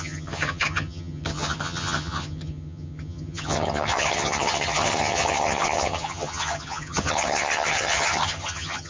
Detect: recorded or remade remade